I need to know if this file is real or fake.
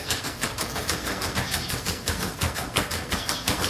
fake